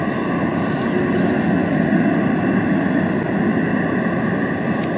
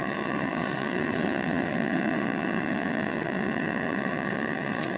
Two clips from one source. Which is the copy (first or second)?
second